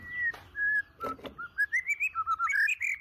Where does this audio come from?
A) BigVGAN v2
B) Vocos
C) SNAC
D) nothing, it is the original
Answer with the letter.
D